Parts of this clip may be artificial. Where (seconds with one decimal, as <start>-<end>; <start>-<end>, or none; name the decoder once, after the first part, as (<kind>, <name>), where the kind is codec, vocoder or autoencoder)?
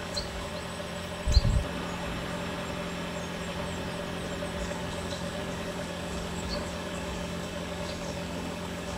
0.0-0.5 (codec, DAC); 4.6-9.0